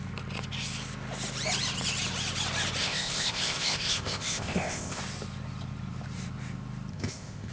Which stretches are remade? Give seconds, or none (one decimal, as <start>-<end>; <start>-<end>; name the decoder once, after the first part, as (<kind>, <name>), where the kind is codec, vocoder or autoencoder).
2.8-5.0 (codec, ZipCodec); 6.9-7.5